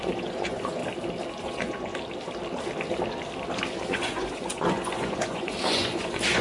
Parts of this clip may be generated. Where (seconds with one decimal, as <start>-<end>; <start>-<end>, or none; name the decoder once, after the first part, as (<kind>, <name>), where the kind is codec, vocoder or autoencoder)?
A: 0.0-0.8 (vocoder, Vocos); 1.4-1.9; 3.7-6.4